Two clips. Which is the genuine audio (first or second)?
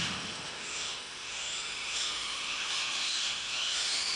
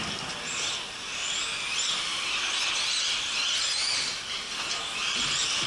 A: second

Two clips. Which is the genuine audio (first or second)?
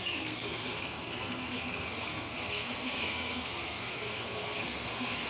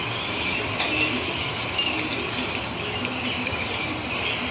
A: second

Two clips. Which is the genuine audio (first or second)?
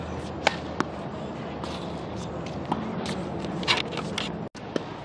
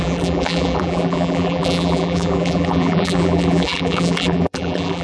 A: first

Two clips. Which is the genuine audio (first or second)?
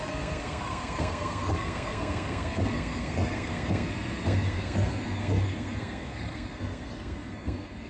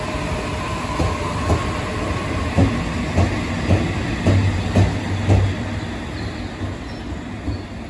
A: second